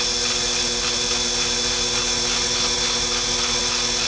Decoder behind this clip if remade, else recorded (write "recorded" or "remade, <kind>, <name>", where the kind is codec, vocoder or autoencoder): recorded